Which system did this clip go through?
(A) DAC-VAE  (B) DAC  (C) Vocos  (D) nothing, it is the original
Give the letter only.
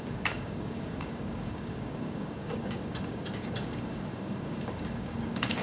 B